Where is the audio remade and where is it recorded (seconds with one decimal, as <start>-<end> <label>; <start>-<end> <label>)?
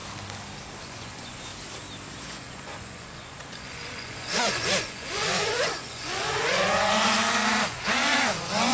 0.0-0.8 recorded; 0.8-1.5 remade; 1.5-2.2 recorded; 2.2-7.2 remade; 7.2-7.7 recorded; 7.7-8.7 remade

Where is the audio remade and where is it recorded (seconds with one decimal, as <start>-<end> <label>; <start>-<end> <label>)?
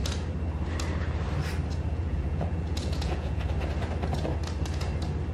0.0-1.9 recorded; 1.9-3.4 remade; 3.4-5.3 recorded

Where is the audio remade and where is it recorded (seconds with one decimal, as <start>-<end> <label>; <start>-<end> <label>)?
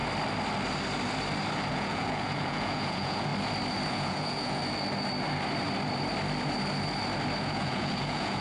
0.0-1.7 recorded; 1.7-3.3 remade; 3.3-3.9 recorded; 3.9-4.6 remade; 4.6-7.4 recorded; 7.4-8.4 remade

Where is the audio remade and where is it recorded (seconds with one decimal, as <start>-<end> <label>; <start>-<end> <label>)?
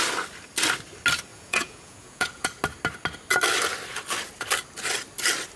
0.0-1.3 recorded; 1.3-2.5 remade; 2.5-5.6 recorded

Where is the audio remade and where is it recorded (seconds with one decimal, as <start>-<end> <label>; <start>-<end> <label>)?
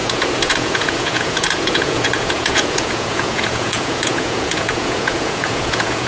0.0-6.1 remade